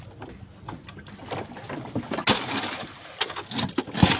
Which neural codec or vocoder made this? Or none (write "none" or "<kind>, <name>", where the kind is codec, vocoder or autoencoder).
none